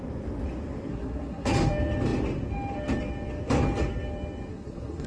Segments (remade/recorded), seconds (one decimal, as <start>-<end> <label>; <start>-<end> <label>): 0.0-0.9 recorded; 0.9-1.5 remade; 1.5-4.5 recorded; 4.5-5.1 remade